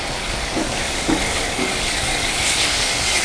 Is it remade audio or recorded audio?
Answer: remade